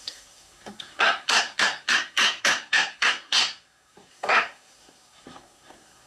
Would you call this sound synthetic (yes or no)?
yes